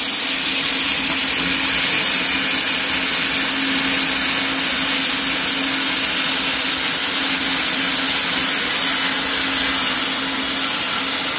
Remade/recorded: recorded